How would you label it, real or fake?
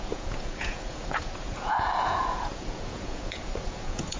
fake